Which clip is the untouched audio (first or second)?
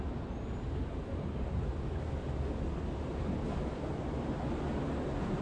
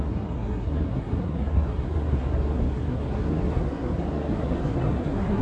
first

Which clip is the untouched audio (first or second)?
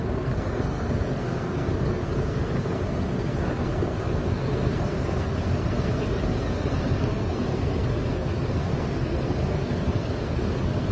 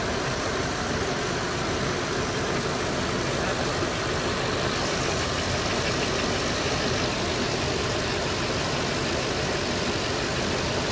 second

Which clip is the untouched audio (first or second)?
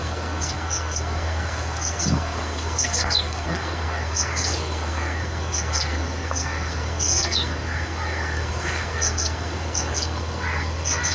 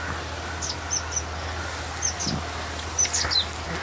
second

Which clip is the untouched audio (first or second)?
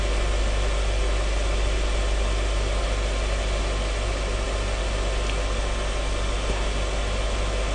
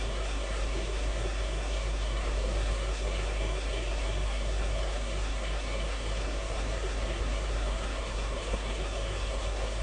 first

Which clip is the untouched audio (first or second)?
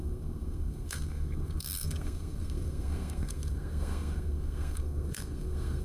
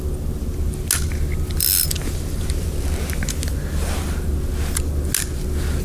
second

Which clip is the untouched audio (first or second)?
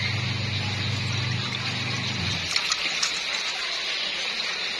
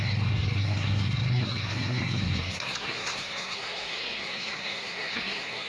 first